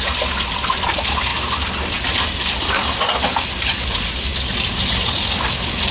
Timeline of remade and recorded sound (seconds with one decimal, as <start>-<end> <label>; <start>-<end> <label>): 0.0-1.3 remade; 1.3-3.9 recorded; 3.9-4.3 remade; 4.3-5.9 recorded